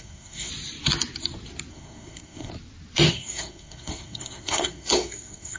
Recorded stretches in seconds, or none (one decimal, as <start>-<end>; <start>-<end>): 0.5-1.7; 2.5-3.1